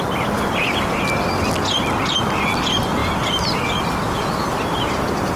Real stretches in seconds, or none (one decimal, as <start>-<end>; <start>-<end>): 0.0-5.4